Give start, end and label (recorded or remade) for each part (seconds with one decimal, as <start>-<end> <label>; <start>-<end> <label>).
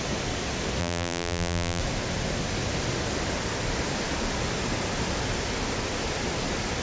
0.0-0.8 recorded; 0.8-1.8 remade; 1.8-6.8 recorded